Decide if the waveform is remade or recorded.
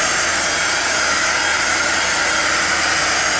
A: recorded